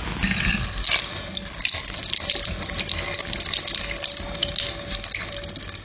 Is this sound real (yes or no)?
yes